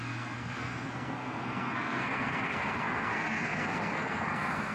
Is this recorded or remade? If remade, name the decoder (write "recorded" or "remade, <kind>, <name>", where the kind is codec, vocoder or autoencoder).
remade, codec, SNAC